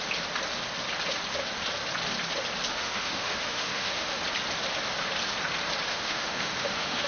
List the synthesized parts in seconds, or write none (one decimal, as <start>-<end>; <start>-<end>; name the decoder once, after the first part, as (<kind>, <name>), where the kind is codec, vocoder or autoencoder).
2.7-4.2 (autoencoder, DAC-VAE); 5.9-7.1